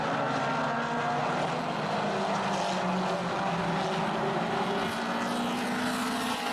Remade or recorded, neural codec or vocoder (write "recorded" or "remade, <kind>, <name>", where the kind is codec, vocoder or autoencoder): recorded